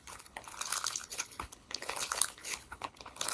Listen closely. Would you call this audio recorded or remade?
remade